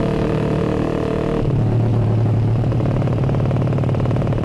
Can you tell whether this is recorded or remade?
remade